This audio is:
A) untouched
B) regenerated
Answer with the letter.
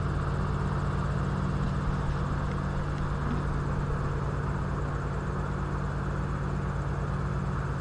A